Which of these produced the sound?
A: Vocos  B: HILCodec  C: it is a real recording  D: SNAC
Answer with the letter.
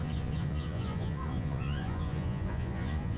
A